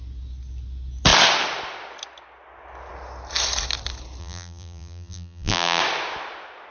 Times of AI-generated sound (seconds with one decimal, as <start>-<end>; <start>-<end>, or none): 4.2-5.8